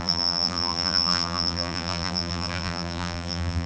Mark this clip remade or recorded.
remade